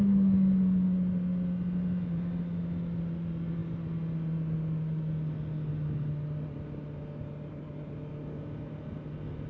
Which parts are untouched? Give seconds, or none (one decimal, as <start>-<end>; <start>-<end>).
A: 0.0-9.5